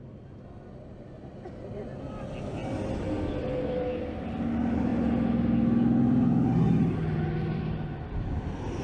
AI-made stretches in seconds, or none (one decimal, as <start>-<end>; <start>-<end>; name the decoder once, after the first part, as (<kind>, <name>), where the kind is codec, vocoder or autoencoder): none